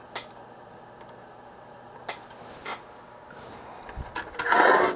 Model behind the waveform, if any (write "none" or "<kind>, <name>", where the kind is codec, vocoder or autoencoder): none